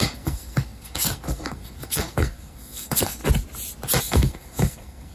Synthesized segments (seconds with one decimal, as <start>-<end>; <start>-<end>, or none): 0.0-3.2; 4.0-5.1